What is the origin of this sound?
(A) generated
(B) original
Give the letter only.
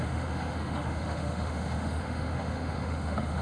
A